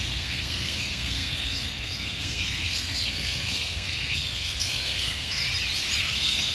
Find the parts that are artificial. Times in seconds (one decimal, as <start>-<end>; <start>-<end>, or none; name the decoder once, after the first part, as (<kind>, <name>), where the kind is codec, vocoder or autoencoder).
0.0-5.4 (codec, SNAC); 6.0-6.5